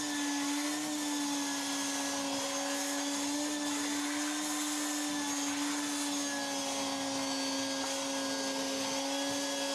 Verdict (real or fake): real